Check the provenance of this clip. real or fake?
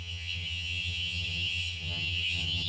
fake